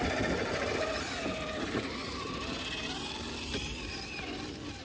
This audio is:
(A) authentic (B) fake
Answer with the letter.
A